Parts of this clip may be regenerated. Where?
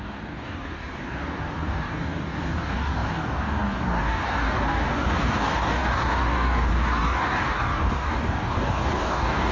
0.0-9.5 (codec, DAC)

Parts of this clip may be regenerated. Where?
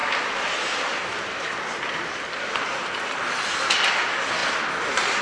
none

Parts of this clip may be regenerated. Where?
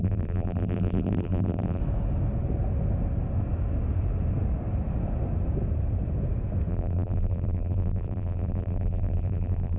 0.0-1.8 (vocoder, BigVGAN v2); 6.7-9.8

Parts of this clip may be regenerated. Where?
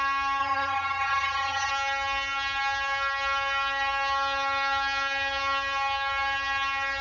0.4-1.7 (vocoder, HiFi-GAN)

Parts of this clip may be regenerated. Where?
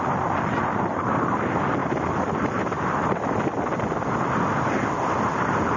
none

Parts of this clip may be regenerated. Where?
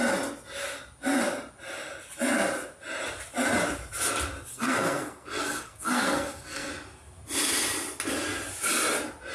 4.5-6.7 (codec, SNAC)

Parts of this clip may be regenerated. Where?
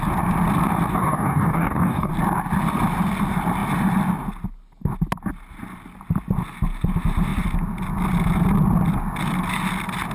0.9-2.1 (codec, DAC)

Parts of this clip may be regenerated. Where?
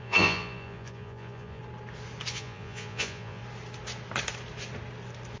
0.0-1.6 (vocoder, Vocos); 2.3-3.4